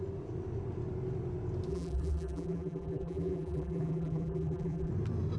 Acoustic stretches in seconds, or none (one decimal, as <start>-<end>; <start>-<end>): 0.0-1.7; 4.9-5.4